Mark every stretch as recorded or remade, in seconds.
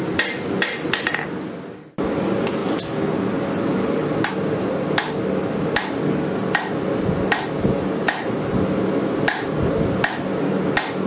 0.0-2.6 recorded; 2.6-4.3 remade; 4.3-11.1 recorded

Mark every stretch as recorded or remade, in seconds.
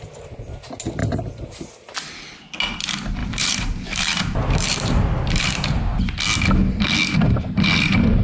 0.0-1.0 recorded; 1.0-1.7 remade; 1.7-3.2 recorded; 3.2-6.2 remade; 6.2-8.2 recorded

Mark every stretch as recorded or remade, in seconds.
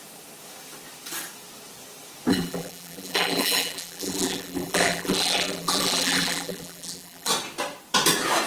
0.0-2.3 recorded; 2.3-7.3 remade; 7.3-8.5 recorded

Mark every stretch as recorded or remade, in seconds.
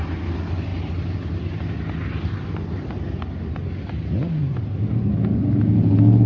0.0-0.7 recorded; 0.7-1.8 remade; 1.8-2.3 recorded; 2.3-3.0 remade; 3.0-4.4 recorded; 4.4-5.1 remade; 5.1-6.3 recorded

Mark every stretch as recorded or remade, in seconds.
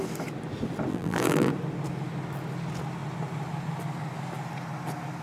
0.0-0.9 recorded; 0.9-1.5 remade; 1.5-5.2 recorded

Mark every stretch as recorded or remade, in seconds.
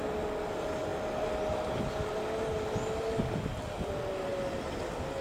0.0-5.2 recorded